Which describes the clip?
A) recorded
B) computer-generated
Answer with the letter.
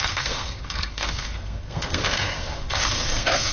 B